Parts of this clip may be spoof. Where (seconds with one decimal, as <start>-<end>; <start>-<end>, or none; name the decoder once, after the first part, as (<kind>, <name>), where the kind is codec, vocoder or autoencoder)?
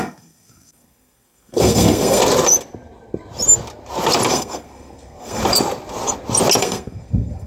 0.0-2.2 (codec, SNAC); 4.3-5.4; 6.6-7.5